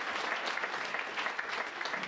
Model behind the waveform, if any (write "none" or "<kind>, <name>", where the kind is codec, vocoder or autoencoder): none